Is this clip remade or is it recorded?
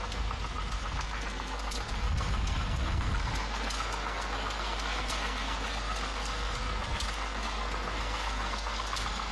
remade